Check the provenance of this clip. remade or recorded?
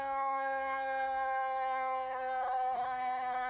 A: remade